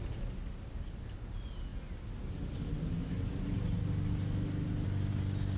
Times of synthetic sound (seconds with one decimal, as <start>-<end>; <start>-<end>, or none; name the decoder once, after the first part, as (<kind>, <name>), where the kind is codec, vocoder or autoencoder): none

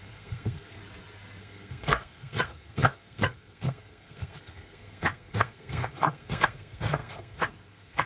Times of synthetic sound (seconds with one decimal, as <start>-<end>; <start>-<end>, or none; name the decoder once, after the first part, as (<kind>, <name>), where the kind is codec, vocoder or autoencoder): 0.0-0.8 (codec, SNAC); 1.4-8.1

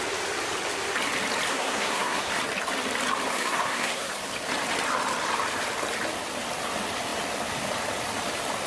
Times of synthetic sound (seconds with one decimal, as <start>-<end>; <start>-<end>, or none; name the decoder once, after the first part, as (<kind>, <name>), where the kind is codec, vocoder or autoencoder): 1.5-2.3 (codec, SNAC); 3.3-4.1

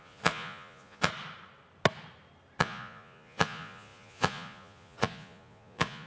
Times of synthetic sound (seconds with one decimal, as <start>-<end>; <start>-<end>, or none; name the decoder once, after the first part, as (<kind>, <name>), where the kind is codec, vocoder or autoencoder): 0.0-1.1 (vocoder, Vocos); 2.6-6.1

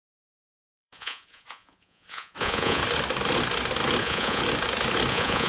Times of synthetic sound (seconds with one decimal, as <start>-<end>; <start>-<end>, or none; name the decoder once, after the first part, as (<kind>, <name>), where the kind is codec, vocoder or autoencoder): 0.0-2.8 (vocoder, Vocos); 4.0-4.4; 5.1-5.5